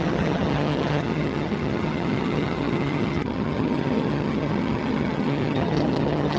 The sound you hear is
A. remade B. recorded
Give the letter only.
A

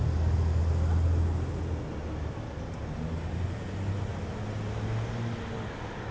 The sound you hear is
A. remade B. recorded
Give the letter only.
B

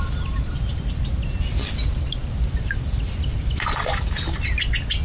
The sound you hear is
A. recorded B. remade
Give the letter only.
A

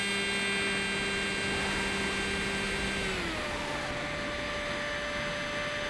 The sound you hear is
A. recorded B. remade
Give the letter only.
A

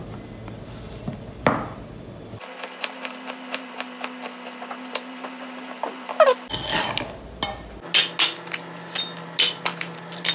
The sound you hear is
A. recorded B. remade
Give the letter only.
A